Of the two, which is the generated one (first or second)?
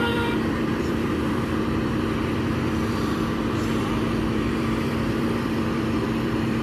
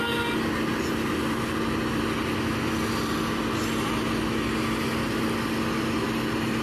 first